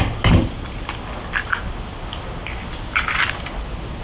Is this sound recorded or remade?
recorded